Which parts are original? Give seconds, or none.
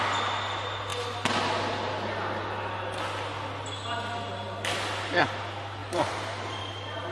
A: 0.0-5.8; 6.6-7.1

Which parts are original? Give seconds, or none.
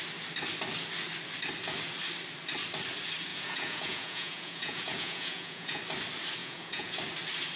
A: 0.0-3.3; 5.8-6.4; 7.0-7.6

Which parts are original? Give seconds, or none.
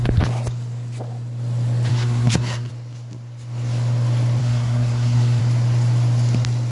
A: 0.0-1.9; 2.7-4.4; 5.4-6.7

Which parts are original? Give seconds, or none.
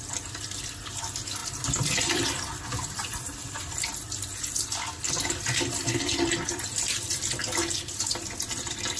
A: 0.0-1.4; 6.3-7.4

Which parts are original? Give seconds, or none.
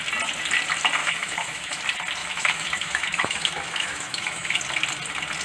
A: 0.0-1.0; 1.8-2.2; 4.6-5.4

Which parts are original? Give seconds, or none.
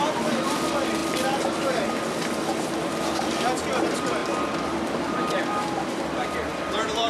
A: 0.0-7.1